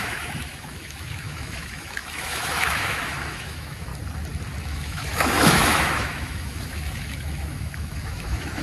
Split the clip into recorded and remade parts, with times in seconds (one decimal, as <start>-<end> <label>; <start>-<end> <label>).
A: 0.0-3.9 remade; 3.9-4.6 recorded; 4.6-8.6 remade